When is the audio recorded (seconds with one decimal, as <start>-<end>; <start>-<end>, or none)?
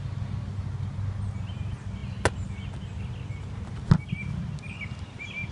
0.0-5.5